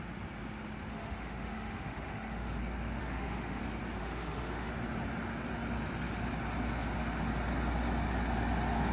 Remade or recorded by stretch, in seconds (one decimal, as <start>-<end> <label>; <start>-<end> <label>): 0.0-0.9 recorded; 0.9-2.6 remade; 2.6-3.0 recorded; 3.0-3.6 remade; 3.6-4.0 recorded; 4.0-4.7 remade; 4.7-8.9 recorded